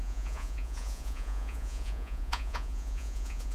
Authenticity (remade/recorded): remade